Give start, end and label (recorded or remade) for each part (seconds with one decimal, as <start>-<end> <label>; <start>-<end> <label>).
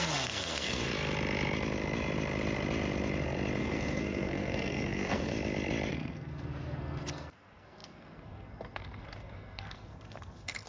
0.0-0.9 remade; 0.9-3.6 recorded; 3.6-5.3 remade; 5.3-5.9 recorded; 5.9-10.7 remade